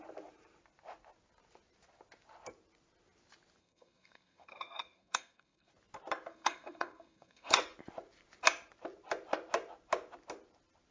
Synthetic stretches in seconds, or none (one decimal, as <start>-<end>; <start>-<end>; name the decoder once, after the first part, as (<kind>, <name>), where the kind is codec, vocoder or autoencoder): 3.6-5.7 (codec, SNAC); 6.3-7.5